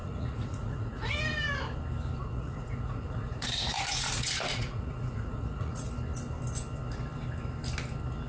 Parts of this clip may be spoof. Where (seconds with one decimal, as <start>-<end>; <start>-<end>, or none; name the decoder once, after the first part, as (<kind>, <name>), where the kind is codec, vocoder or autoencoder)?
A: 0.0-1.1 (vocoder, Vocos); 2.2-5.9